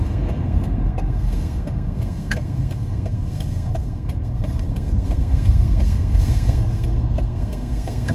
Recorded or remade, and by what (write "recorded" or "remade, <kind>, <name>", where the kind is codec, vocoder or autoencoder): remade, codec, SNAC